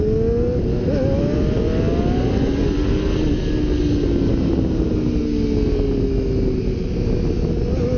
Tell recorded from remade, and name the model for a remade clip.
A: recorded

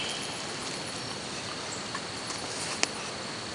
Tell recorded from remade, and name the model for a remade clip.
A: recorded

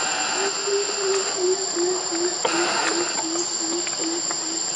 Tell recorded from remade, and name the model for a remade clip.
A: recorded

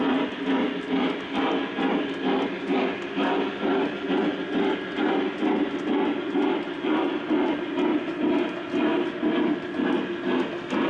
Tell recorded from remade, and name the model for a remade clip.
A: recorded